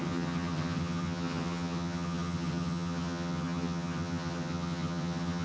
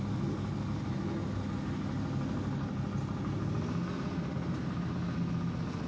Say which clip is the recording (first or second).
second